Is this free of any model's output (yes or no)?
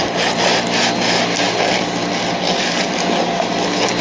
yes